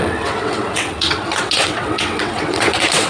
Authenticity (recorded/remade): remade